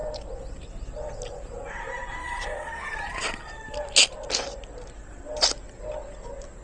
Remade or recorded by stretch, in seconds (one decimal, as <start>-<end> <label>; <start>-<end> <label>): 0.0-2.2 recorded; 2.2-3.4 remade; 3.4-6.6 recorded